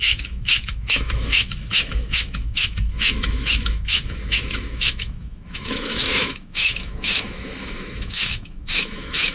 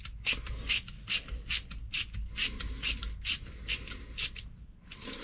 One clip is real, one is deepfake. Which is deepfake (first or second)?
first